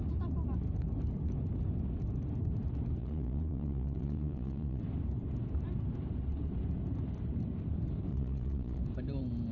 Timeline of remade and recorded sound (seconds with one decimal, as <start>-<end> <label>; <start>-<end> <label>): 0.0-3.0 recorded; 3.0-4.8 remade; 4.8-8.1 recorded; 8.1-8.8 remade; 8.8-9.5 recorded

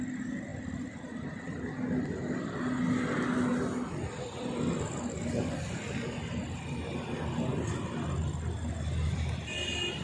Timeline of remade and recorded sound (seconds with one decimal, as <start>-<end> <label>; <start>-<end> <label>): 0.0-10.0 recorded

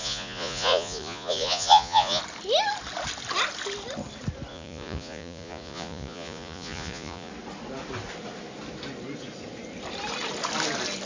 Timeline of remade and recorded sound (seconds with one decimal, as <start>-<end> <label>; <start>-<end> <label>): 0.0-2.2 remade; 2.2-4.5 recorded; 4.5-7.3 remade; 7.3-11.1 recorded

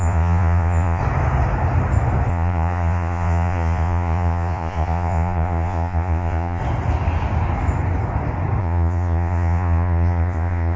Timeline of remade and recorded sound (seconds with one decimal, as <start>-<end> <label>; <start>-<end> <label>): 0.0-1.0 remade; 1.0-2.3 recorded; 2.3-6.6 remade; 6.6-8.6 recorded; 8.6-10.8 remade